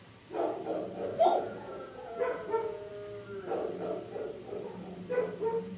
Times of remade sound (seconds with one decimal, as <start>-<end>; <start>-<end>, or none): 1.3-2.9